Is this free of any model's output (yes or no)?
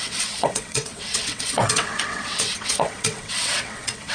no